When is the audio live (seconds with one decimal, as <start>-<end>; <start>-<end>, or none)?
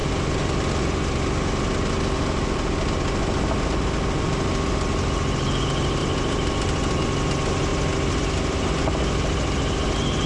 0.0-6.0; 7.0-10.3